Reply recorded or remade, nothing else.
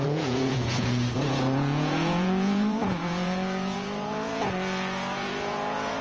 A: remade